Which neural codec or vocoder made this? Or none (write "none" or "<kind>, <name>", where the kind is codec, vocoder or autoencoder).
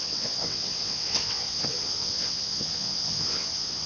vocoder, WaveNeXt